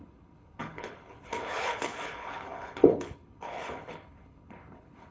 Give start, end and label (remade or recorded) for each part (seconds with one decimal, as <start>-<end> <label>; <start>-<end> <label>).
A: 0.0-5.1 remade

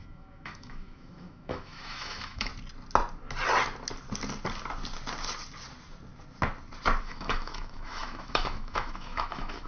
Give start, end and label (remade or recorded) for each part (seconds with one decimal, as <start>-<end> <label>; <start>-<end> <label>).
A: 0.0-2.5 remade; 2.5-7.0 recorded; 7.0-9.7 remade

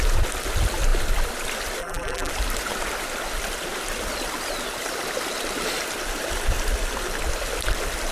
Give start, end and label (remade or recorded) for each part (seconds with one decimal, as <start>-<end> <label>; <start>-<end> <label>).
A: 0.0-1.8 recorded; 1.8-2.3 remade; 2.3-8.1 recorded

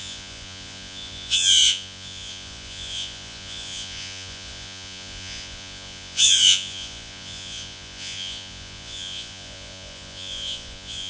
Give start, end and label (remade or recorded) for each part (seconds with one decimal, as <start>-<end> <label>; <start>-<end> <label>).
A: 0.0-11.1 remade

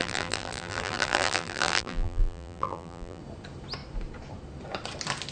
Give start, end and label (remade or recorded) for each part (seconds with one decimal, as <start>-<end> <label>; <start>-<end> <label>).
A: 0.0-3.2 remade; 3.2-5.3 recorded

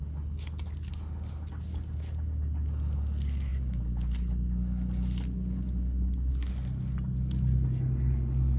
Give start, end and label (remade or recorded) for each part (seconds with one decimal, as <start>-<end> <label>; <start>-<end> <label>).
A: 0.0-8.6 recorded